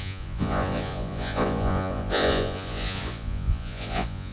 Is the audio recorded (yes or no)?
no